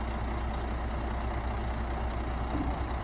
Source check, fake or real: real